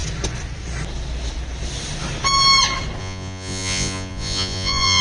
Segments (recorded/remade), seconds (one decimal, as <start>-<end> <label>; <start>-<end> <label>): 0.0-3.0 recorded; 3.0-5.0 remade